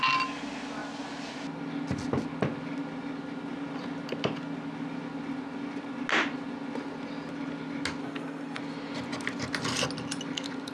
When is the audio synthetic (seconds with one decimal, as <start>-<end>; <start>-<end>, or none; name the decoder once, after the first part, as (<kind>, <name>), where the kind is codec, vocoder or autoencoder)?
8.0-8.6 (codec, SNAC)